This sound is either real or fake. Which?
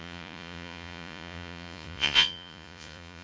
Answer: fake